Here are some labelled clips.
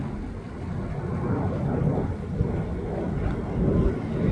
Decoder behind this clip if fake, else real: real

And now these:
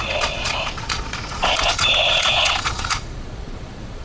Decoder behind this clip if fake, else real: fake, vocoder, Vocos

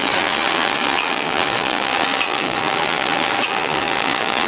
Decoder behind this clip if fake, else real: fake, vocoder, Vocos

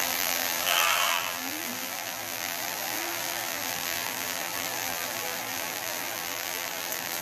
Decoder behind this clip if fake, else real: fake, vocoder, BigVGAN v2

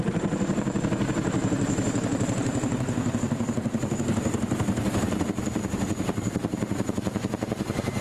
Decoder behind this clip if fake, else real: fake, vocoder, BigVGAN v2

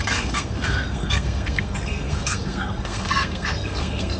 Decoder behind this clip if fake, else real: fake, codec, SNAC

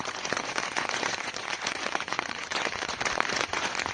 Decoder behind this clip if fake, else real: fake, vocoder, Vocos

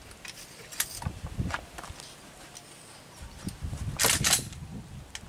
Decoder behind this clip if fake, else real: real